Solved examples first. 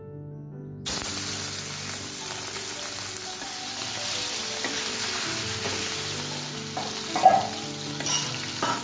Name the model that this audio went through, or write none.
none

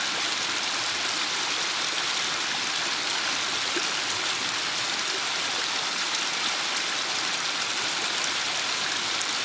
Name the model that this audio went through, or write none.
none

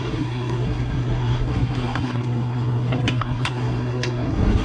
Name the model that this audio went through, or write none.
codec, SNAC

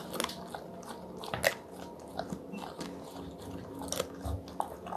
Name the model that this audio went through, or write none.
none